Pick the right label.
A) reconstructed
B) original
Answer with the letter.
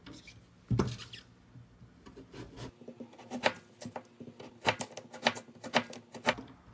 B